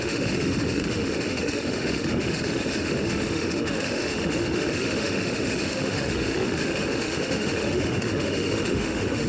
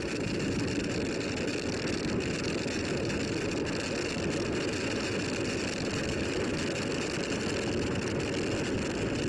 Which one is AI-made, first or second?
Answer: first